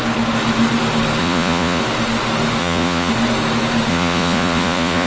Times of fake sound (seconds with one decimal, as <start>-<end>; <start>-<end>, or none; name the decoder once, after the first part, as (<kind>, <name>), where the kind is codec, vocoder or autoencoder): 1.2-1.8 (vocoder, Vocos); 2.6-3.1; 3.9-5.1